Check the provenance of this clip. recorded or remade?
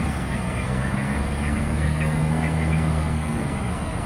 remade